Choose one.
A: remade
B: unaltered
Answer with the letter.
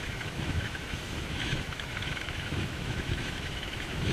A